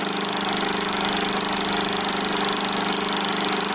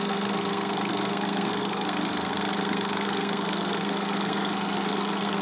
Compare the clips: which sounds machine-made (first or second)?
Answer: second